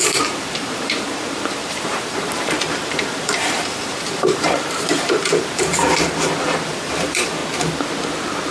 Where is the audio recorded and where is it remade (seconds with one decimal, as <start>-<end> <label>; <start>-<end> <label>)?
0.0-7.4 remade; 7.4-8.5 recorded